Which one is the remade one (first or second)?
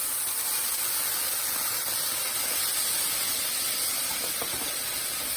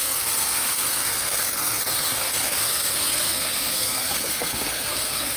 second